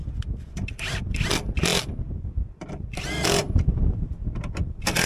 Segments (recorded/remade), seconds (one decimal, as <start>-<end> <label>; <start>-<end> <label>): 0.0-3.4 recorded; 3.4-4.1 remade; 4.1-5.1 recorded